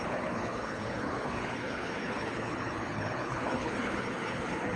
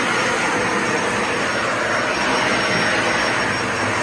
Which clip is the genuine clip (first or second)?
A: second